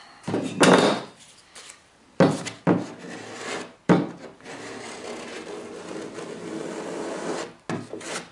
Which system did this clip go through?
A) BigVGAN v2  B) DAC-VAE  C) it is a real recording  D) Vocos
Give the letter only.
C